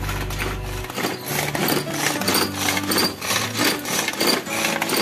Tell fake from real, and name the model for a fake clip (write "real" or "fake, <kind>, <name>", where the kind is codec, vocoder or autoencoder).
real